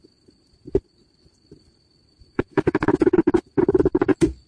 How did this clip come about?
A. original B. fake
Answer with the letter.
B